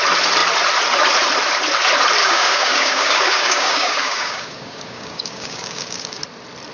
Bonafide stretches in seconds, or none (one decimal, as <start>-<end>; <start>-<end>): 0.0-2.2; 6.2-6.7